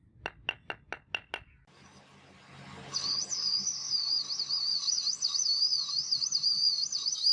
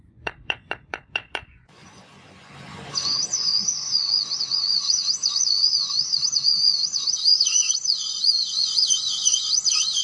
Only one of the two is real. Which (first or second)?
first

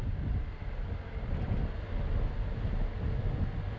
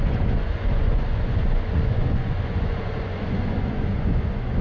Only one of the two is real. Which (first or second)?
first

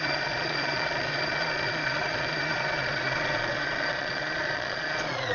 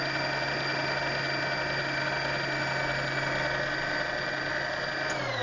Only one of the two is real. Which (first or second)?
second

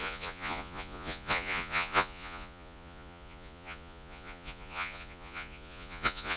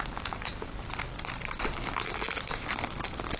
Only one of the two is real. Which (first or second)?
second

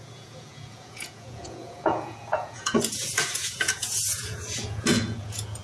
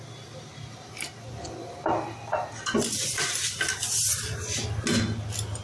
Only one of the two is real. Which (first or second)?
second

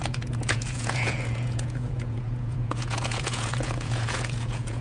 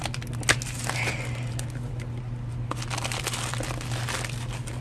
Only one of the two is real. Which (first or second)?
second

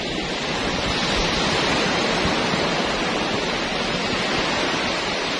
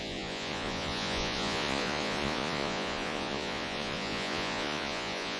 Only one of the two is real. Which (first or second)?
first